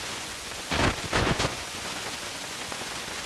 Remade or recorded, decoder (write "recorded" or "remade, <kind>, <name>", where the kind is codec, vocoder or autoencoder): remade, vocoder, Vocos